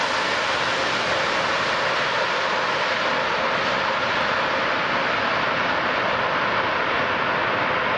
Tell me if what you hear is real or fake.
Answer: real